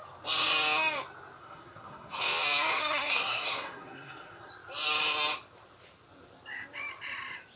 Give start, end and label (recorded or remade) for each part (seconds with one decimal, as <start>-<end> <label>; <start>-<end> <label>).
0.0-1.4 recorded; 1.4-2.2 remade; 2.2-2.7 recorded; 2.7-4.5 remade; 4.5-7.6 recorded